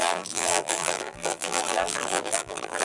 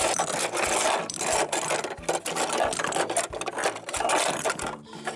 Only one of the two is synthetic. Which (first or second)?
first